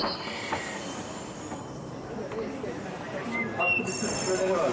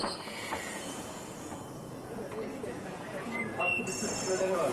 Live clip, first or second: first